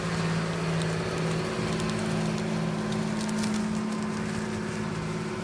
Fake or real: real